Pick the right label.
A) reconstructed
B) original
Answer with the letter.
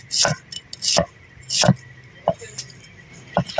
B